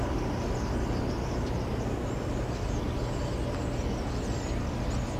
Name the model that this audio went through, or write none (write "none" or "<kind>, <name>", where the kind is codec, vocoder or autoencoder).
none